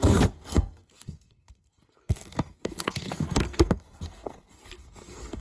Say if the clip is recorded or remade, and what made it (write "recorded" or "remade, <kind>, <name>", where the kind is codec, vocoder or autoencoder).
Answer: remade, codec, SNAC